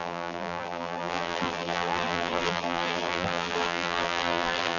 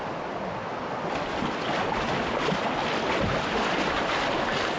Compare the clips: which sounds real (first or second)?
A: second